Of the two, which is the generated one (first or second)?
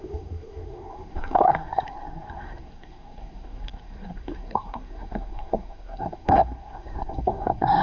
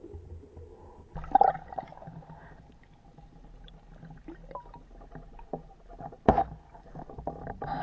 first